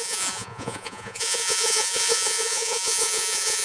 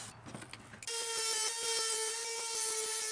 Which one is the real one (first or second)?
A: second